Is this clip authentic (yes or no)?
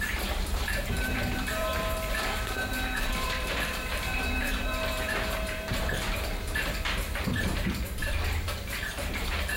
no